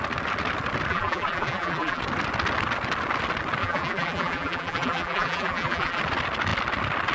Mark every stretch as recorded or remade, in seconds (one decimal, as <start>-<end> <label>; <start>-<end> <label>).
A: 0.0-0.9 recorded; 0.9-2.0 remade; 2.0-3.6 recorded; 3.6-6.0 remade; 6.0-7.1 recorded